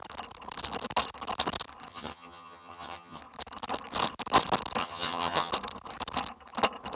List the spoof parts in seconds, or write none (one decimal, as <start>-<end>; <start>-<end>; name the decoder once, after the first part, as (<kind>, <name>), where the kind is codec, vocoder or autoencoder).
1.9-3.2 (vocoder, HiFi-GAN); 4.8-5.5